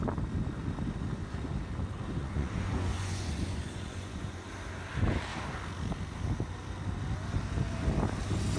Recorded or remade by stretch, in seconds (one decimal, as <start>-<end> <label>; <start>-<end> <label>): 0.0-2.2 recorded; 2.2-4.5 remade; 4.5-8.6 recorded